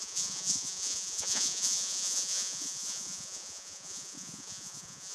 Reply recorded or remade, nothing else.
remade